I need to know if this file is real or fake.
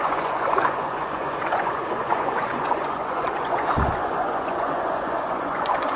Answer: fake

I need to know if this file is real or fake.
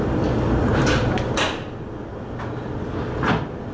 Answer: real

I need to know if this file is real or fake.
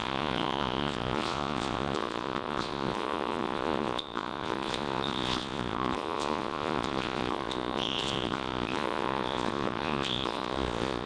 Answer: fake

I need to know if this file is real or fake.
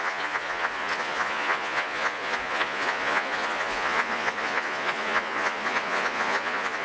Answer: fake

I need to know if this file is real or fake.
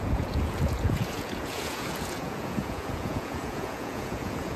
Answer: fake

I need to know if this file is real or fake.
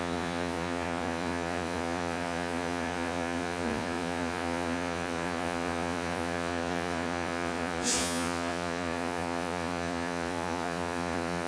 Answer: fake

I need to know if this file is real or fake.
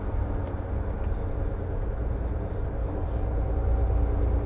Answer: real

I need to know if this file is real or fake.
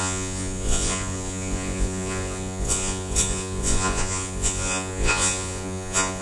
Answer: fake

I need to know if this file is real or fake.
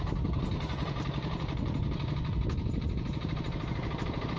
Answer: real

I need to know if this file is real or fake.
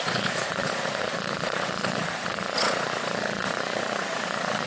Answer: fake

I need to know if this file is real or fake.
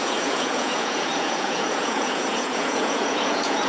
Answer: fake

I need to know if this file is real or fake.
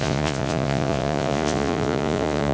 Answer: fake